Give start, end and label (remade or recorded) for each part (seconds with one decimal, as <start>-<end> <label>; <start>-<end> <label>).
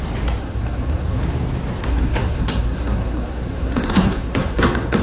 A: 0.0-0.4 recorded; 0.4-1.2 remade; 1.2-1.8 recorded; 1.8-5.0 remade